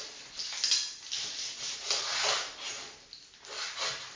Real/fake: real